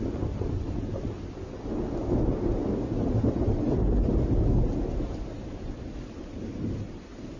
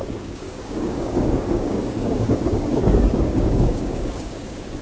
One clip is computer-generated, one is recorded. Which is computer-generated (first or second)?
second